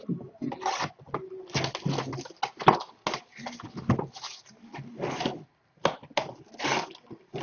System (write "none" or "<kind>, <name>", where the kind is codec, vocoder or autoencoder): none